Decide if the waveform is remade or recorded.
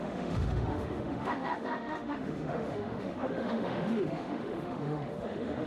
remade